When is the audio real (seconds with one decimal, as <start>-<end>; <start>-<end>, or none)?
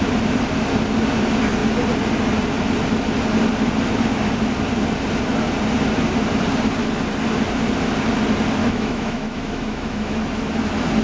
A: 0.0-8.6; 10.2-11.0